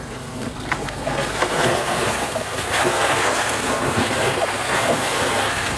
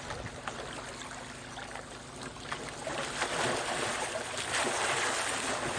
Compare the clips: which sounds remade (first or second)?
first